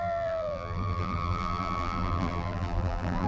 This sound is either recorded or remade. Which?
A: remade